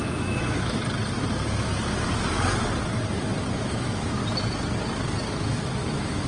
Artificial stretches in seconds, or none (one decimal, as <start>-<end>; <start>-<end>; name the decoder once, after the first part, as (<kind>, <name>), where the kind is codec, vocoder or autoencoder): 0.0-0.8 (autoencoder, DAC-VAE); 3.5-4.2; 5.3-6.3